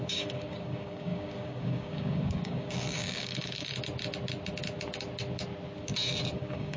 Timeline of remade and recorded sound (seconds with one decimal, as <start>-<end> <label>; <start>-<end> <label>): 0.0-3.7 remade; 3.7-6.3 recorded; 6.3-6.8 remade